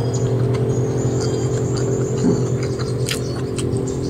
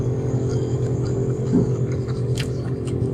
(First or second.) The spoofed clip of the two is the second